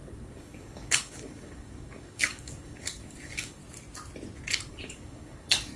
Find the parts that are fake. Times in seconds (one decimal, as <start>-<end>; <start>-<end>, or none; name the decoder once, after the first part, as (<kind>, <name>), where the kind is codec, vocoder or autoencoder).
0.0-3.6 (codec, DAC); 4.7-5.8